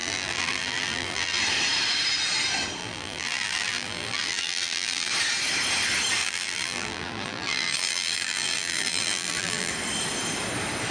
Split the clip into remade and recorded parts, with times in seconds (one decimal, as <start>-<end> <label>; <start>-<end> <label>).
0.0-1.4 remade; 1.4-2.8 recorded; 2.8-5.1 remade; 5.1-6.2 recorded; 6.2-9.7 remade; 9.7-10.9 recorded